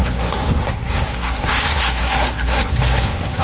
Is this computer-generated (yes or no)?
yes